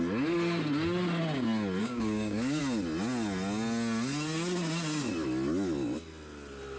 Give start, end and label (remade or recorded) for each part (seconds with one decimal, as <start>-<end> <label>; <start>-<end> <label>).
0.0-1.8 recorded; 1.8-2.6 remade; 2.6-6.8 recorded